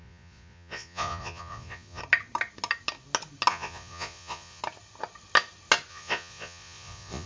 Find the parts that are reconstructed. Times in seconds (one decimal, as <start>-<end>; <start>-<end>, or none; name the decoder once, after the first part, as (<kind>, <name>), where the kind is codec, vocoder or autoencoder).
0.0-2.0 (vocoder, Vocos); 3.5-4.6; 5.9-7.3